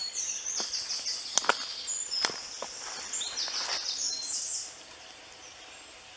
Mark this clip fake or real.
real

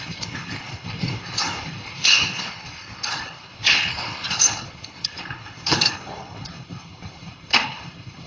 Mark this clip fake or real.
fake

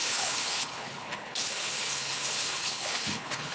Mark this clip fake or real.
fake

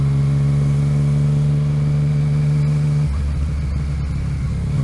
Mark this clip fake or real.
real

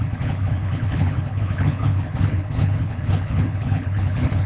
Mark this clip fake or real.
fake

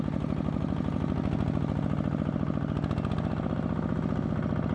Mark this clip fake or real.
real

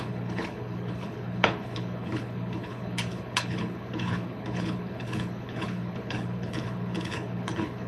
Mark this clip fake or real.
fake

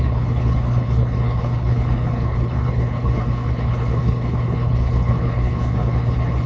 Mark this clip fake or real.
fake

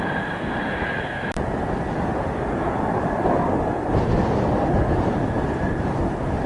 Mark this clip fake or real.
real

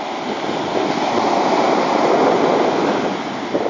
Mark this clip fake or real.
real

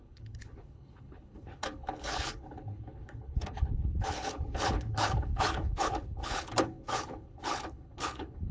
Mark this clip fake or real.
fake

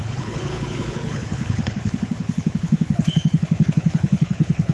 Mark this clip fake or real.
fake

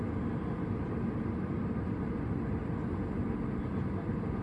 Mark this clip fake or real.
real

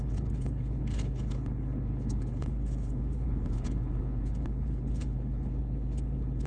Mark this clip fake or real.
fake